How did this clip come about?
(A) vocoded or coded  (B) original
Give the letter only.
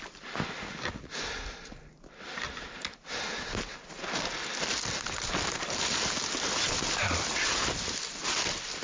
B